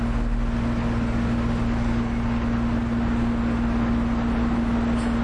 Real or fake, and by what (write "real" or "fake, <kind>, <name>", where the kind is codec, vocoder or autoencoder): real